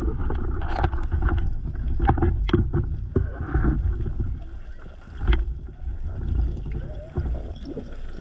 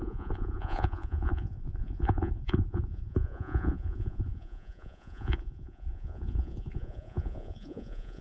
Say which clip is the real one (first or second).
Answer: first